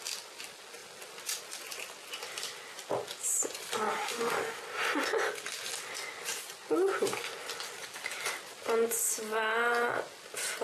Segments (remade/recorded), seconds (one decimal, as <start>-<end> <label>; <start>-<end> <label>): 0.0-3.9 recorded; 3.9-4.6 remade; 4.6-10.6 recorded